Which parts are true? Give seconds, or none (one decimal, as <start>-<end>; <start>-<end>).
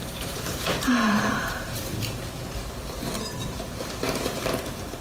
3.0-3.4